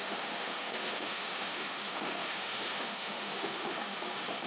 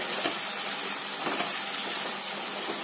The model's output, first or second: first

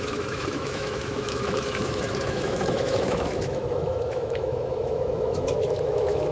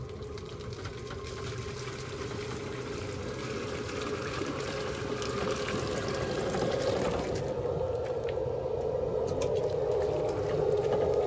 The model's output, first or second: first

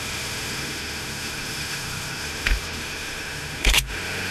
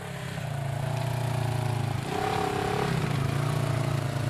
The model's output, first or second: first